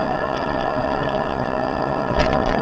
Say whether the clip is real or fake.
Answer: fake